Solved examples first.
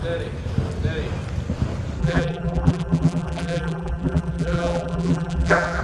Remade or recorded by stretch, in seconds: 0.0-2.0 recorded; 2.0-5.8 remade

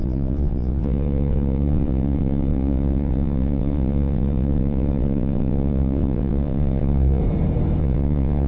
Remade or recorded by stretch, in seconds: 0.0-7.2 remade; 7.2-7.8 recorded; 7.8-8.5 remade

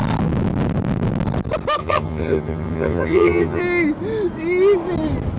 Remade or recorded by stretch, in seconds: 0.0-1.8 recorded; 1.8-3.6 remade; 3.6-5.4 recorded

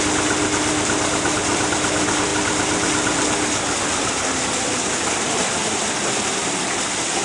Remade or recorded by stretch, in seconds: 0.0-7.2 recorded

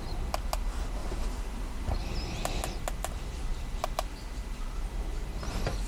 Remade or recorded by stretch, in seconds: 0.0-1.0 recorded; 1.0-1.9 remade; 1.9-5.9 recorded

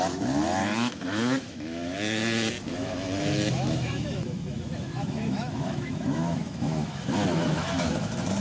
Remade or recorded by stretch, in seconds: 0.0-2.2 remade; 2.2-2.7 recorded; 2.7-8.4 remade

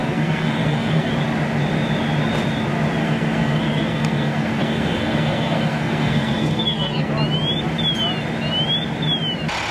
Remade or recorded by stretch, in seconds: 0.0-1.1 remade; 1.1-3.0 recorded; 3.0-7.1 remade; 7.1-9.7 recorded

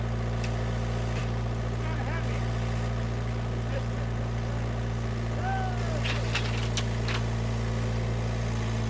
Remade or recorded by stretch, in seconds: 0.0-8.9 recorded